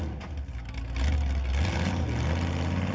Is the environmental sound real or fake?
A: real